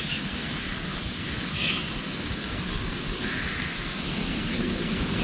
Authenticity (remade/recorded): remade